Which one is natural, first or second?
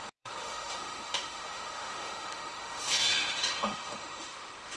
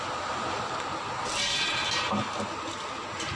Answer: second